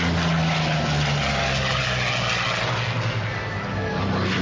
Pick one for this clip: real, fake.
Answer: real